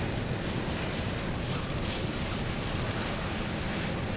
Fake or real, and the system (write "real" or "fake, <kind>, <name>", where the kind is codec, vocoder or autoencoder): real